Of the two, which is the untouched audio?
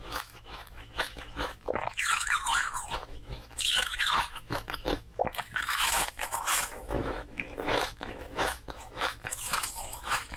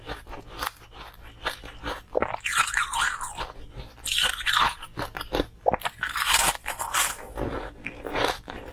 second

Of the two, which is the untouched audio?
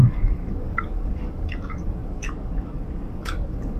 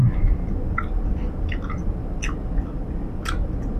second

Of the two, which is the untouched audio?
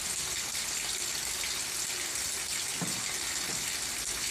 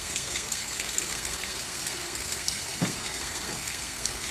first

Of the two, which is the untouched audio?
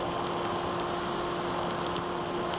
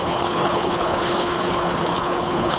first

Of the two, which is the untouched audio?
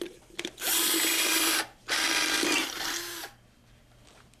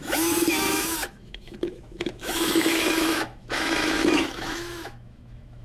first